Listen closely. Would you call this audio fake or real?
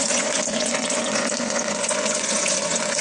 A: fake